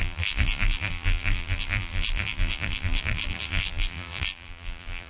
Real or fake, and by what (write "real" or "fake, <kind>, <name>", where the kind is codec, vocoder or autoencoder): fake, vocoder, BigVGAN v2